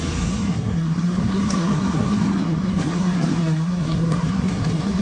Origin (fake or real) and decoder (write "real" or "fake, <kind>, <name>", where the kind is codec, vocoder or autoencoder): fake, codec, SNAC